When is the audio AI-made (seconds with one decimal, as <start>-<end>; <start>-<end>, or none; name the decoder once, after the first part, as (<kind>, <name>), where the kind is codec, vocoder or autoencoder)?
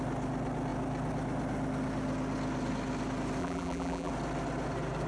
3.4-4.1 (vocoder, BigVGAN v2)